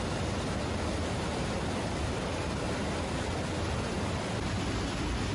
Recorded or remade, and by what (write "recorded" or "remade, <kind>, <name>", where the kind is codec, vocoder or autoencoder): recorded